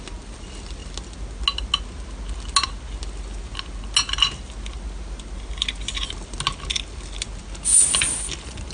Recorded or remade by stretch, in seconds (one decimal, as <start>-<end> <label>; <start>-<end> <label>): 0.0-8.7 recorded

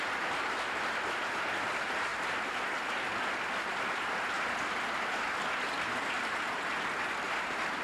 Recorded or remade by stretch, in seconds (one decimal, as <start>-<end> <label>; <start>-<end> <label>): 0.0-7.8 recorded

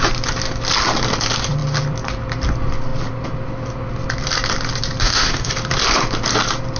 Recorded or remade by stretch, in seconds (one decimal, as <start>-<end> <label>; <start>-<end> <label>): 0.0-5.0 recorded; 5.0-5.5 remade; 5.5-6.8 recorded

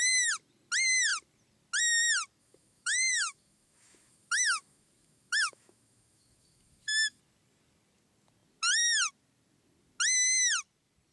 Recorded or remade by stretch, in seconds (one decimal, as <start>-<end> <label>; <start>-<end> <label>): 0.0-2.4 recorded; 2.4-7.2 remade; 7.2-11.1 recorded

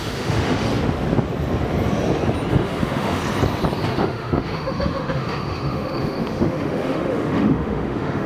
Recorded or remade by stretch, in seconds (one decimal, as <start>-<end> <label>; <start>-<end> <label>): 0.0-0.7 remade; 0.7-2.5 recorded; 2.5-3.2 remade; 3.2-3.9 recorded; 3.9-8.3 remade